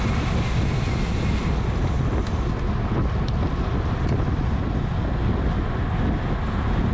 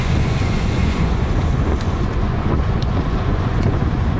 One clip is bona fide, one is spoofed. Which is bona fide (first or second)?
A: first